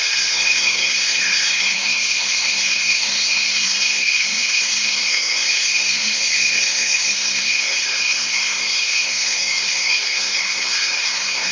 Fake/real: fake